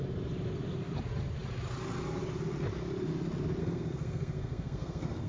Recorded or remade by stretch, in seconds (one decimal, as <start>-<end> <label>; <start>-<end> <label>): 0.0-3.6 recorded; 3.6-5.3 remade